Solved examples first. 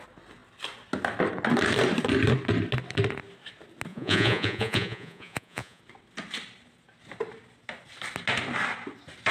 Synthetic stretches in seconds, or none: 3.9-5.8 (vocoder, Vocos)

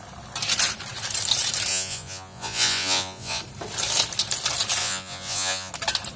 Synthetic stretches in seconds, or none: 1.7-3.4 (vocoder, Vocos); 4.8-5.7

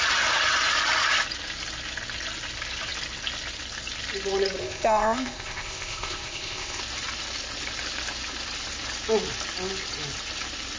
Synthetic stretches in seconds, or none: 4.6-6.8 (codec, ZipCodec)

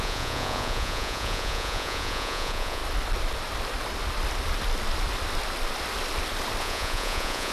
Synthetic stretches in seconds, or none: 0.0-2.8 (vocoder, Vocos); 6.6-7.5

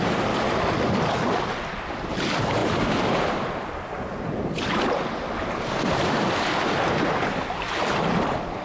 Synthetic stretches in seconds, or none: none

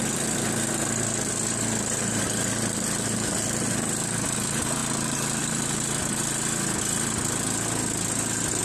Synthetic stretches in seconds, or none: none